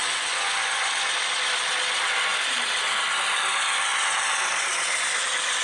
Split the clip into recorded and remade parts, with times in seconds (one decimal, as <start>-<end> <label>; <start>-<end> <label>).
0.0-0.9 remade; 0.9-5.6 recorded